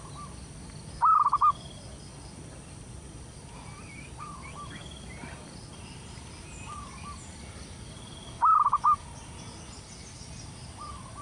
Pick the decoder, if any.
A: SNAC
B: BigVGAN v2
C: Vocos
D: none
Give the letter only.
D